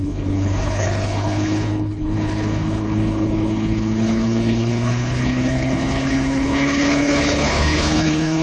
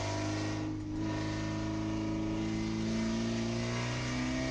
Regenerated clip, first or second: first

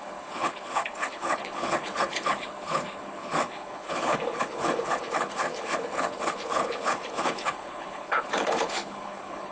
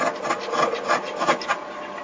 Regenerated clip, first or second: first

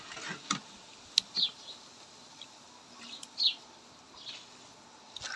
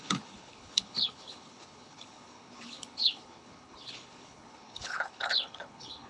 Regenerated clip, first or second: second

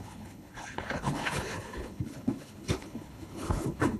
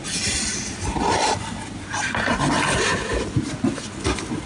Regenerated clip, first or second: first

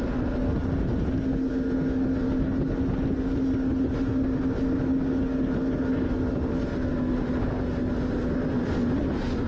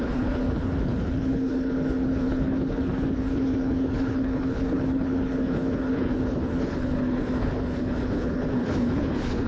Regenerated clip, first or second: second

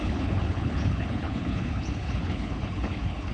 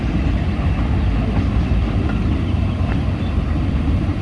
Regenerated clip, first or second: first